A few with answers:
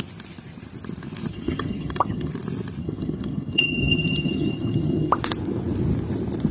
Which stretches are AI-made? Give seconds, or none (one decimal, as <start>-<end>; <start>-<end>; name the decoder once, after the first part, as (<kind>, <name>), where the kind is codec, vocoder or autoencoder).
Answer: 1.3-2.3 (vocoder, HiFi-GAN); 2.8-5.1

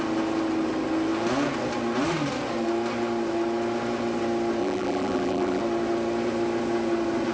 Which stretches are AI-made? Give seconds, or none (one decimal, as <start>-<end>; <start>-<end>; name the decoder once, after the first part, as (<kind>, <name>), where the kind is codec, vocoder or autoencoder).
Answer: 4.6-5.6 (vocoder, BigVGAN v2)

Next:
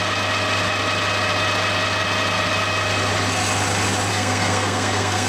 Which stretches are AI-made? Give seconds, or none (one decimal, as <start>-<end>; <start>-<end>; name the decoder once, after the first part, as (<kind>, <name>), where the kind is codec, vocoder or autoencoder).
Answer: 4.1-5.3 (codec, SNAC)

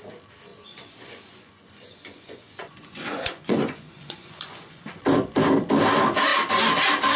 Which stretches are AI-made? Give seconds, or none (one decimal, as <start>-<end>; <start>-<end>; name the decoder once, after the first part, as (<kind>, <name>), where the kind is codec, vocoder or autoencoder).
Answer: 0.5-4.8 (vocoder, Vocos)

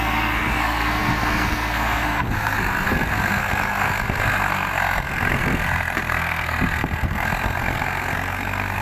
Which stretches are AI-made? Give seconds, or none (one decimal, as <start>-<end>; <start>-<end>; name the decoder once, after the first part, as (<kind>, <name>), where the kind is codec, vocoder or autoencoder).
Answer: 0.0-8.8 (codec, SNAC)

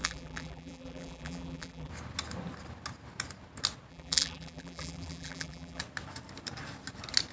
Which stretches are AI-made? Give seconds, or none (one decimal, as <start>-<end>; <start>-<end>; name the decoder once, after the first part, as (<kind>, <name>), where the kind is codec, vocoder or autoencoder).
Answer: 0.0-1.9 (vocoder, BigVGAN v2); 3.9-5.8